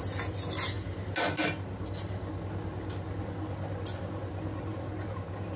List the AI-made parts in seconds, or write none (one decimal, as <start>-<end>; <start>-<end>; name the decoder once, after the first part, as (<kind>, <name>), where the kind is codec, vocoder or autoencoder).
none